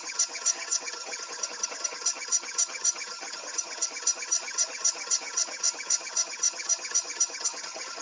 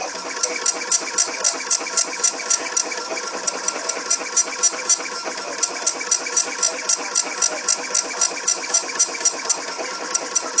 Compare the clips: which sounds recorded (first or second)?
second